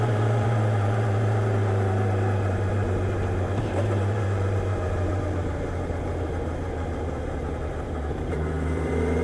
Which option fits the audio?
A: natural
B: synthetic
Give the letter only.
B